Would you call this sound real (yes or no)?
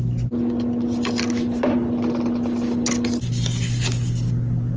yes